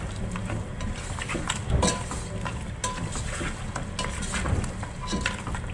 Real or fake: real